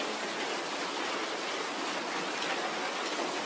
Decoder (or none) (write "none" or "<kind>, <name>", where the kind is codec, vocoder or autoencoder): none